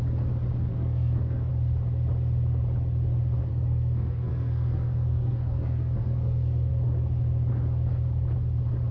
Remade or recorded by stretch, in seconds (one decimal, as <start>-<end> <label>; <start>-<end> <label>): 0.0-0.7 recorded; 0.7-1.5 remade; 1.5-3.5 recorded; 3.5-6.7 remade; 6.7-8.9 recorded